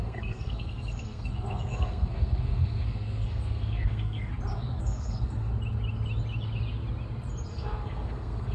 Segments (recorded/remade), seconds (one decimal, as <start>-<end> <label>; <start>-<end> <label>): 0.0-4.3 remade; 4.3-4.8 recorded; 4.8-5.5 remade; 5.5-7.5 recorded; 7.5-8.5 remade